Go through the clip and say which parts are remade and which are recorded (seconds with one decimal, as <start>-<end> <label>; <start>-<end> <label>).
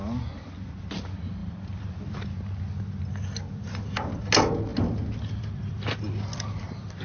0.0-7.0 recorded